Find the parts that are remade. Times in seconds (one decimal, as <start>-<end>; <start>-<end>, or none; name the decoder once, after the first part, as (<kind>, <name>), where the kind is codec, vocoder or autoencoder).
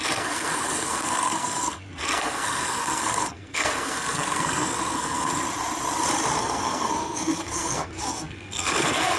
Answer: 0.0-5.3 (codec, SNAC); 6.4-9.2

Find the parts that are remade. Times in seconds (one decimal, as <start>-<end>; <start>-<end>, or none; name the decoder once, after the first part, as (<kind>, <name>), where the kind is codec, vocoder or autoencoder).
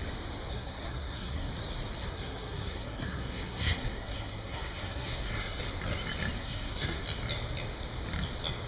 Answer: 0.5-1.5 (codec, SNAC); 2.0-5.6; 6.4-7.0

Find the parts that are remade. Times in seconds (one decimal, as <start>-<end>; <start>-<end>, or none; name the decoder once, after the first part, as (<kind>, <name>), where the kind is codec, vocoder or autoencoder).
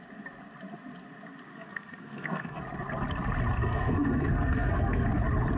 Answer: 1.5-2.6 (codec, SNAC); 3.6-5.1